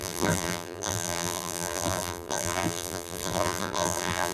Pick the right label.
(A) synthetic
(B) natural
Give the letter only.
A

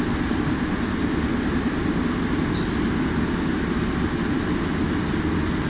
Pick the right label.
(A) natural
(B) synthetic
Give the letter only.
A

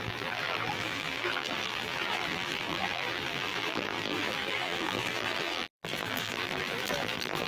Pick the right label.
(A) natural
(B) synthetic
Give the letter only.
B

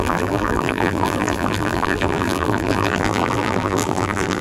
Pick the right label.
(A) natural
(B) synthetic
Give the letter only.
B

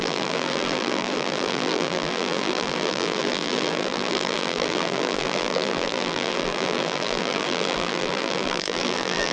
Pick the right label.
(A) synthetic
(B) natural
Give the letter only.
A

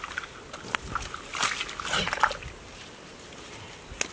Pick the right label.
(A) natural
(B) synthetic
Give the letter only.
A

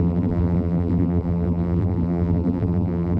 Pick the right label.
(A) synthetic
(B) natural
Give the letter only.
A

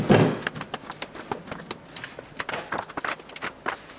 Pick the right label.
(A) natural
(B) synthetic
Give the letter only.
B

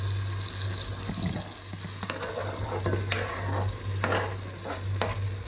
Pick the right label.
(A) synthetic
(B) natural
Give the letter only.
B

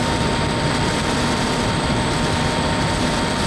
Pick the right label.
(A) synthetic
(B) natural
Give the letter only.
A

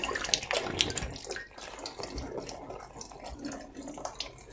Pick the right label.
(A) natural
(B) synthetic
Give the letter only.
A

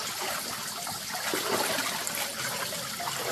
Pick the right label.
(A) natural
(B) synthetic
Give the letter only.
A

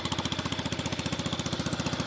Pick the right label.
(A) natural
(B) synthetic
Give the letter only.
A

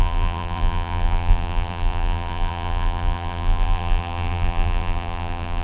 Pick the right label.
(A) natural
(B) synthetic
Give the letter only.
B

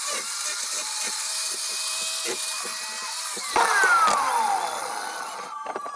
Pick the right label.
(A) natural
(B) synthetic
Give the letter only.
B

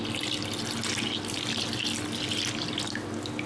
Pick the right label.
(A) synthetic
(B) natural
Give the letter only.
B